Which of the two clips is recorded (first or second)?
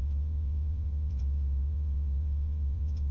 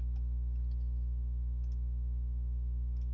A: second